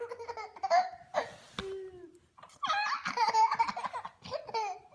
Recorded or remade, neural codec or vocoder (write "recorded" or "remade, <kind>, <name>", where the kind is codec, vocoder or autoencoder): recorded